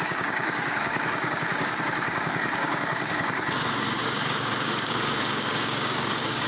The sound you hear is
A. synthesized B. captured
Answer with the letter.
A